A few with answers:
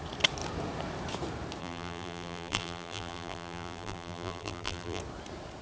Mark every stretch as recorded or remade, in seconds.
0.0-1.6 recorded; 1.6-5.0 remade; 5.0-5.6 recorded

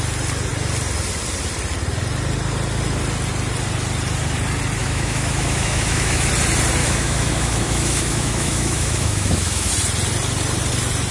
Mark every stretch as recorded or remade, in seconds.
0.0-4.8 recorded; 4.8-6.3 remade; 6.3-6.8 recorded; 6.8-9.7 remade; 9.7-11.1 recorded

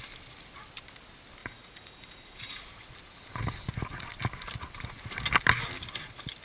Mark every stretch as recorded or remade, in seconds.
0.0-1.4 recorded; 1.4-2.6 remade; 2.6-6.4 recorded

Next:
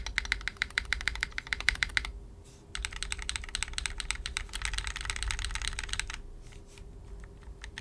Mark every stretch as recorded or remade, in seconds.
0.0-0.5 recorded; 0.5-1.9 remade; 1.9-7.8 recorded

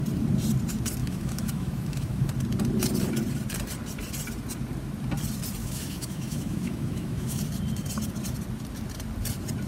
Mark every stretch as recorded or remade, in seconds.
0.0-1.0 recorded; 1.0-2.3 remade; 2.3-5.6 recorded; 5.6-7.4 remade; 7.4-9.7 recorded

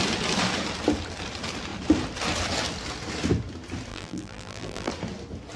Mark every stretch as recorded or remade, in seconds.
0.0-3.9 recorded; 3.9-4.9 remade; 4.9-5.6 recorded